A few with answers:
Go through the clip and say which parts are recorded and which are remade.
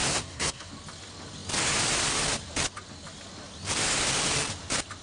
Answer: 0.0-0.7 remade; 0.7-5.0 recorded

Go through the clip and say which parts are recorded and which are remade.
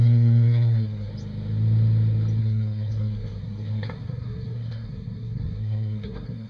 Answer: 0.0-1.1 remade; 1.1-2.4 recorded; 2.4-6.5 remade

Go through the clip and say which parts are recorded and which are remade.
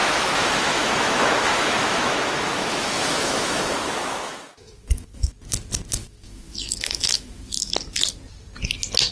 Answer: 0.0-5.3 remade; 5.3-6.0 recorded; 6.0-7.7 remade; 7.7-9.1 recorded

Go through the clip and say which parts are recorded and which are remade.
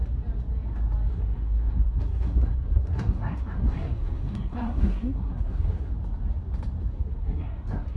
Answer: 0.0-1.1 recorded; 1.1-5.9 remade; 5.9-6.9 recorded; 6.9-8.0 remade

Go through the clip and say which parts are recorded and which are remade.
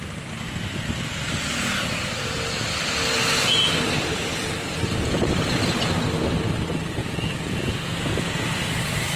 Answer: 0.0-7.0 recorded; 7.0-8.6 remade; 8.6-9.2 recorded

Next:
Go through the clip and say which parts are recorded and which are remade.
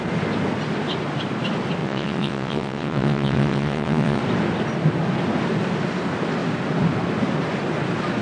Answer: 0.0-1.8 recorded; 1.8-4.2 remade; 4.2-8.2 recorded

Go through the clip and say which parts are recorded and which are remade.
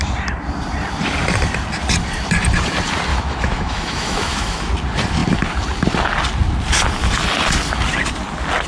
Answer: 0.0-3.1 recorded; 3.1-4.7 remade; 4.7-8.7 recorded